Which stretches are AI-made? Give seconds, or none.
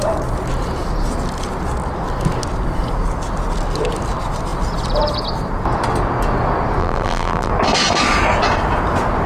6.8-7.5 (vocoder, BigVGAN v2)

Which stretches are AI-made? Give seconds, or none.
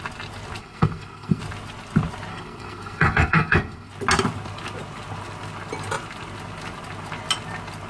0.6-1.4 (codec, SNAC); 2.3-3.9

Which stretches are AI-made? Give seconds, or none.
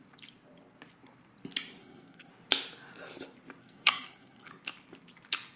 1.8-2.3 (codec, SNAC); 3.6-4.5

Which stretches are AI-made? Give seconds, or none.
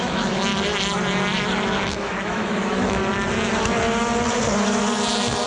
0.0-0.5 (autoencoder, DAC-VAE); 1.9-3.0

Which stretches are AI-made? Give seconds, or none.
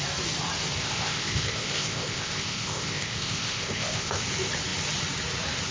0.8-4.2 (codec, ZipCodec)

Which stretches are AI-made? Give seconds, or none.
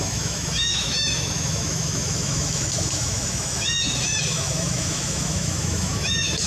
0.0-6.5 (autoencoder, DAC-VAE)